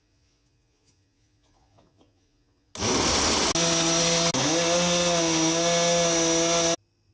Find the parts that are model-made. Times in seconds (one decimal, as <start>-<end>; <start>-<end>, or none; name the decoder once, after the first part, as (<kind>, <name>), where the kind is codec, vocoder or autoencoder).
0.0-2.7 (vocoder, Vocos)